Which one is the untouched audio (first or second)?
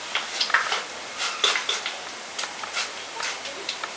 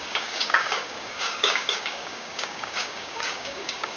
first